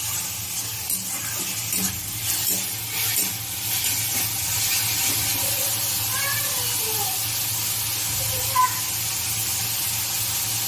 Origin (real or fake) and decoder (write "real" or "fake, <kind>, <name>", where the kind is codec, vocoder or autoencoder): real